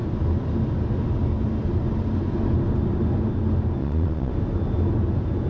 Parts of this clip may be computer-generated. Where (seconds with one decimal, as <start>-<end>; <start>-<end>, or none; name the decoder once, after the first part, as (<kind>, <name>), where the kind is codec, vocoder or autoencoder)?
3.8-4.3 (vocoder, Vocos)